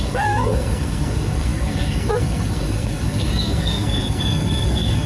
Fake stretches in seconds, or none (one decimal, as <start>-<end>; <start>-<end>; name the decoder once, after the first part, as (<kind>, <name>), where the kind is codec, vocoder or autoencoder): 0.0-5.1 (codec, SNAC)

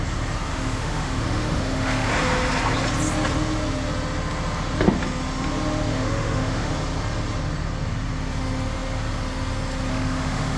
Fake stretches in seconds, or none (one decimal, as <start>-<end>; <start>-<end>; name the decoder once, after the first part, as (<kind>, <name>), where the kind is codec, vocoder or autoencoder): 0.5-2.1 (autoencoder, DAC-VAE); 5.9-6.7; 9.9-10.6

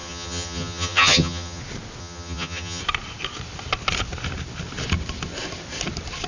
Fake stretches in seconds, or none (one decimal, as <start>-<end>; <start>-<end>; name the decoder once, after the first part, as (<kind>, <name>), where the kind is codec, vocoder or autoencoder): 0.0-1.6 (vocoder, HiFi-GAN); 2.0-2.8

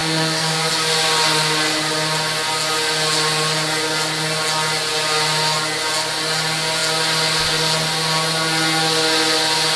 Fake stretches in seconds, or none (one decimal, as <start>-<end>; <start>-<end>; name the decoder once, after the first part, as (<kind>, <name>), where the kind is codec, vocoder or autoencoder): 0.0-0.7 (codec, SNAC)

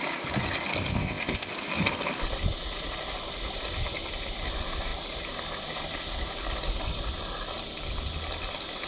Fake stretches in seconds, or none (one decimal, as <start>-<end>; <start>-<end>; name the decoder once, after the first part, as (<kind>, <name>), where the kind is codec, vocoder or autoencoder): 0.9-1.5 (codec, ZipCodec)

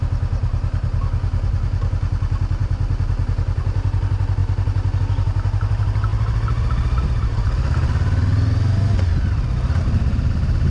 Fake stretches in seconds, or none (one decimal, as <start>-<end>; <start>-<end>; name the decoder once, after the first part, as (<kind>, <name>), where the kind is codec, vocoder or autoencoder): none

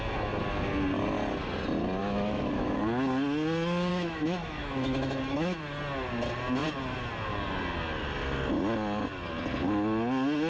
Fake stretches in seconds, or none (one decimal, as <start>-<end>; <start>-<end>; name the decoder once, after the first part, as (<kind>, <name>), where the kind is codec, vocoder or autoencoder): 2.0-2.8 (autoencoder, DAC-VAE); 3.9-5.6

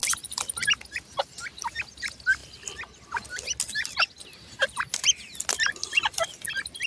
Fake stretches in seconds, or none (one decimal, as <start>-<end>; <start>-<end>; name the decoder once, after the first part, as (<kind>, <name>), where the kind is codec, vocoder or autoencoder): none